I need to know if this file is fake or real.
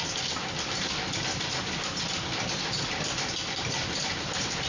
fake